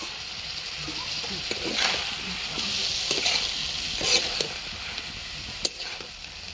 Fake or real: real